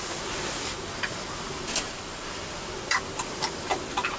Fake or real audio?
real